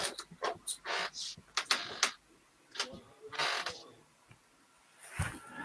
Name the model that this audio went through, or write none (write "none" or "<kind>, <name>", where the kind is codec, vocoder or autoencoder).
none